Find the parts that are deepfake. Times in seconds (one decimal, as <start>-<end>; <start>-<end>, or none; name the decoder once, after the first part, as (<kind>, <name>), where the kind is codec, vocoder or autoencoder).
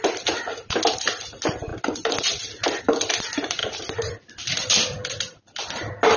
none